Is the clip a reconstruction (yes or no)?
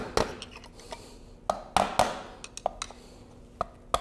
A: no